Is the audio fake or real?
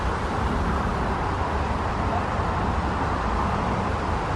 real